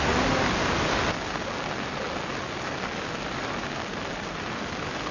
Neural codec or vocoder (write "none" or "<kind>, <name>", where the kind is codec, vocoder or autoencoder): none